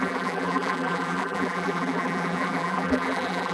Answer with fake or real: fake